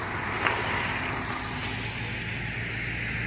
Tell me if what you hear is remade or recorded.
recorded